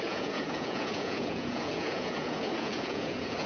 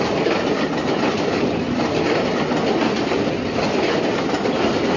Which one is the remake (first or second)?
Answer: first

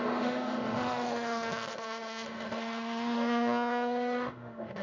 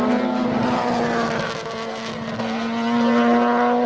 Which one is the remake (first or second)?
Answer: first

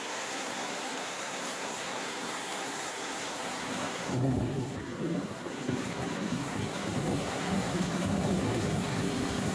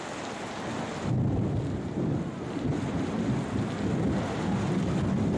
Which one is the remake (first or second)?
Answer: first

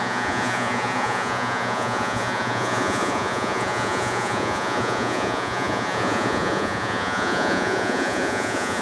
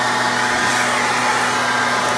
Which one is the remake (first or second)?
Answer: first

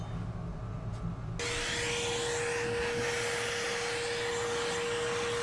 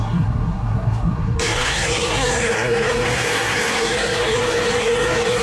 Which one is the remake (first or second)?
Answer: second